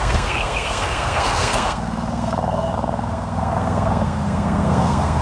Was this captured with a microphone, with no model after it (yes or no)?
no